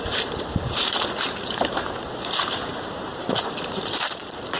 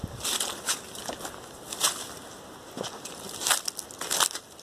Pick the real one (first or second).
second